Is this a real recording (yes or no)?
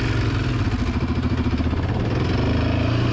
yes